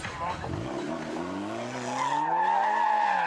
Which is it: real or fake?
real